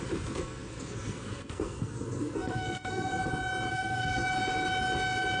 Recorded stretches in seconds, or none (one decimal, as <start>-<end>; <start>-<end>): 3.1-3.7; 4.2-5.4